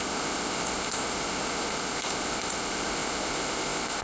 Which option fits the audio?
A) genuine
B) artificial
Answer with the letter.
B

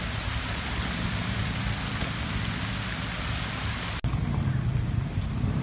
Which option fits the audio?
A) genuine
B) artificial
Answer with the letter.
A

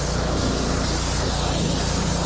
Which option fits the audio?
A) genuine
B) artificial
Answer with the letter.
A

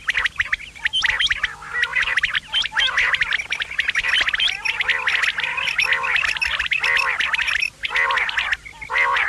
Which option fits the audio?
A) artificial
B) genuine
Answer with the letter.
B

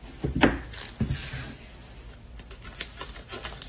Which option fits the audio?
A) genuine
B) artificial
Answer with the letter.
A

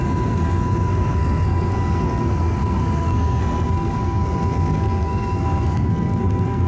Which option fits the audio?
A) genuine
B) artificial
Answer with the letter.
B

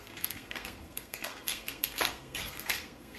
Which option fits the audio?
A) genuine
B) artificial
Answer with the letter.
B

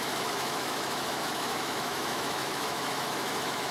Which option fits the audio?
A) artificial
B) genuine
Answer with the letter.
A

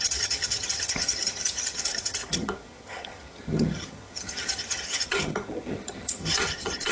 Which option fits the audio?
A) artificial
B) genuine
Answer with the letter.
A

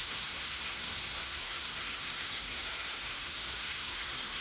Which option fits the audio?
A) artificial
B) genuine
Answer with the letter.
A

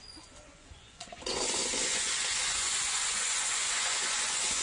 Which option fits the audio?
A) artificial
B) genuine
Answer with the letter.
A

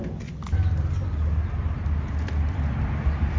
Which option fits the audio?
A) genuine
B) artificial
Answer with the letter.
A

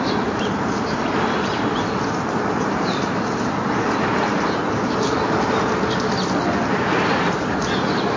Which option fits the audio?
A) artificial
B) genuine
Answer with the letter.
B